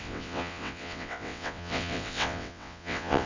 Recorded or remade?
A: remade